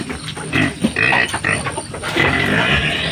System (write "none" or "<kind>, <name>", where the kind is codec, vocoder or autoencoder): none